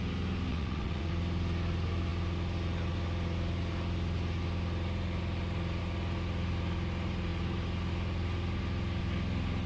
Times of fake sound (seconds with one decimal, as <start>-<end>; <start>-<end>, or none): 0.5-1.1